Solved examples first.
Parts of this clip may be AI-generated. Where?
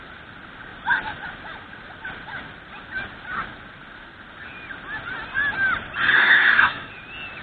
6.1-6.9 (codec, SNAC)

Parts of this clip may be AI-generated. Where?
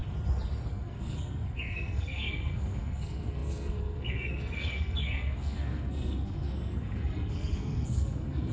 0.7-8.5 (codec, SNAC)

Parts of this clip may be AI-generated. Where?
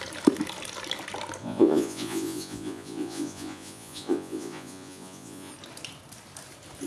1.4-5.5 (vocoder, Vocos)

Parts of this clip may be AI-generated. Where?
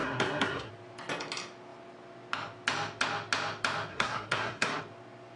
0.0-0.7 (codec, SNAC); 3.9-4.8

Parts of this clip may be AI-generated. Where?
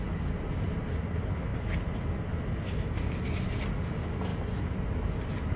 none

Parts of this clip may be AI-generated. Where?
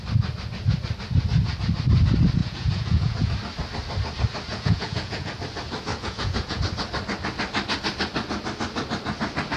2.4-3.3 (vocoder, Vocos); 4.5-5.3; 5.9-6.6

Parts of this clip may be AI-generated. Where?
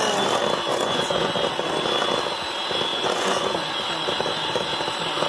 0.7-1.3 (vocoder, Vocos); 2.9-3.7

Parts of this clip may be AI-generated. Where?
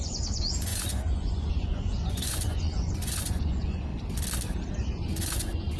0.0-3.9 (vocoder, Vocos); 4.7-5.8